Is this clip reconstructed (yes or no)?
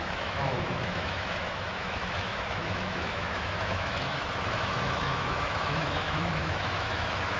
yes